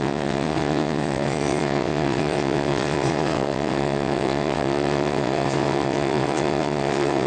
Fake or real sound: fake